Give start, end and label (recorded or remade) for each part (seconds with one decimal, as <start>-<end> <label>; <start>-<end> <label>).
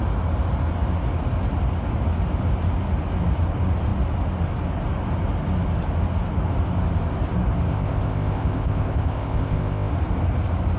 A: 0.0-7.7 recorded; 7.7-9.9 remade; 9.9-10.8 recorded